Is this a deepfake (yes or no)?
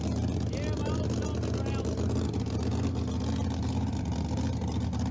no